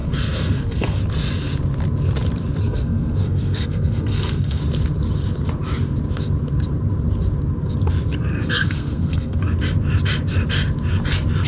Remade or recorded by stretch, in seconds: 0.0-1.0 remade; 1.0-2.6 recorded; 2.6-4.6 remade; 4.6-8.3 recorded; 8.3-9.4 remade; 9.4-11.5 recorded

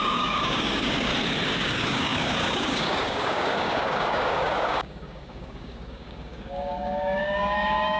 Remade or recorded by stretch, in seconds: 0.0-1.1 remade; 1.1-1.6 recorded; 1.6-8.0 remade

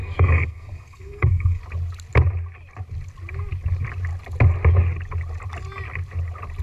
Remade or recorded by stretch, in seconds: 0.0-1.6 remade; 1.6-6.6 recorded

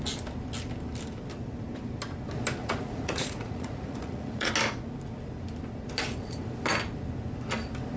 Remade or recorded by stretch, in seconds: 0.0-2.6 recorded; 2.6-4.5 remade; 4.5-8.0 recorded

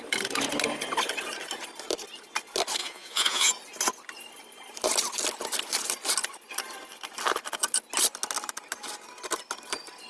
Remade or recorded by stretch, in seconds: 0.0-2.8 recorded; 2.8-3.5 remade; 3.5-10.1 recorded

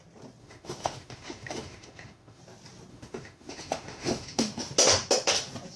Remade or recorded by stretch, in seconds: 0.0-0.4 recorded; 0.4-2.4 remade; 2.4-2.9 recorded; 2.9-4.6 remade; 4.6-5.8 recorded

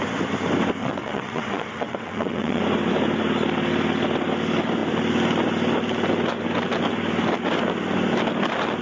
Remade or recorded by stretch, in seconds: 0.0-0.8 recorded; 0.8-2.6 remade; 2.6-8.8 recorded

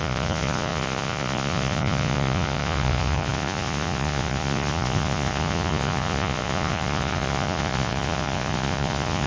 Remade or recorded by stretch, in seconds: 0.0-9.3 remade